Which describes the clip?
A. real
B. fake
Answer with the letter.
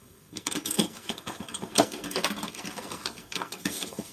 B